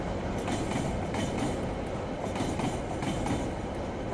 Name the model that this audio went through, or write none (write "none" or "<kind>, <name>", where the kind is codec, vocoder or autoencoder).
none